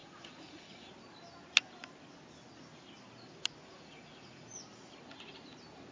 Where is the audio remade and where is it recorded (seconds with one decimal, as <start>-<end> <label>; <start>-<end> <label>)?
0.0-0.9 remade; 0.9-3.6 recorded; 3.6-4.6 remade; 4.6-5.9 recorded